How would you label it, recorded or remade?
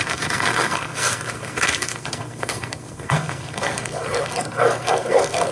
remade